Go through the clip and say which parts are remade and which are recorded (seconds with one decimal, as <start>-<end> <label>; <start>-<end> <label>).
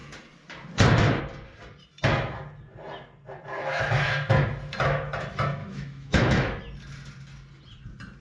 0.0-3.7 recorded; 3.7-4.3 remade; 4.3-5.6 recorded; 5.6-6.6 remade; 6.6-8.2 recorded